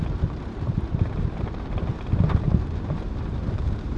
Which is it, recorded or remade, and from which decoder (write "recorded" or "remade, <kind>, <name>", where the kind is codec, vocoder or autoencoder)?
remade, vocoder, BigVGAN v2